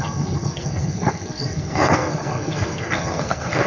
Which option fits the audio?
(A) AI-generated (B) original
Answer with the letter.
A